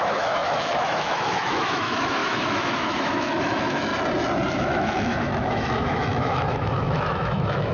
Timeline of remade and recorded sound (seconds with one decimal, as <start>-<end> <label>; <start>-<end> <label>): 0.0-3.9 remade; 3.9-4.5 recorded; 4.5-7.7 remade